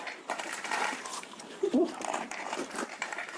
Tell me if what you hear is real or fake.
fake